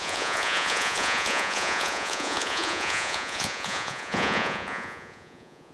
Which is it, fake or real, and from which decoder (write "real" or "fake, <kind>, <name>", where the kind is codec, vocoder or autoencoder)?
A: fake, vocoder, Vocos